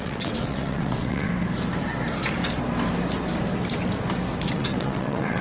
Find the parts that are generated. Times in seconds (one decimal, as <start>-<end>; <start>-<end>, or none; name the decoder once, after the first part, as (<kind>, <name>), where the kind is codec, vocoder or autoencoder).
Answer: 0.0-1.3 (vocoder, WaveNeXt); 4.5-5.4